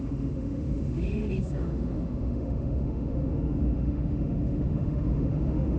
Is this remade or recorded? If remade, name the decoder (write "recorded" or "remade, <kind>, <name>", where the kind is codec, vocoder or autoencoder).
remade, autoencoder, DAC-VAE